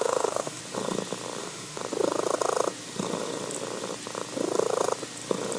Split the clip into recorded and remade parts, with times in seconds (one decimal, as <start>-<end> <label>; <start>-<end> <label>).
0.0-0.6 remade; 0.6-1.4 recorded; 1.4-1.8 remade; 1.8-5.6 recorded